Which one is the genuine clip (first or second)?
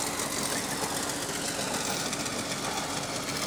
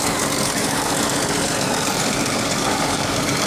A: first